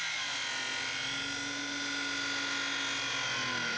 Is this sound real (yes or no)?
yes